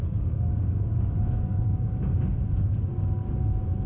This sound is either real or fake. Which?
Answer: fake